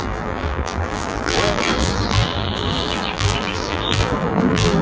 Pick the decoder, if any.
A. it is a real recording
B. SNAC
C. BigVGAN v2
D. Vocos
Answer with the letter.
C